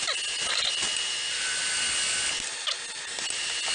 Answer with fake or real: real